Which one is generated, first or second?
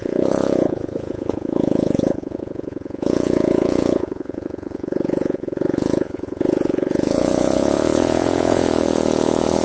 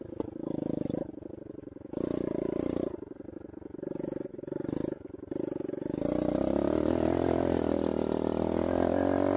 first